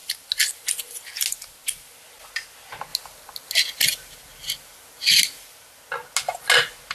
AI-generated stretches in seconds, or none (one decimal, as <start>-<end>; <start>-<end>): none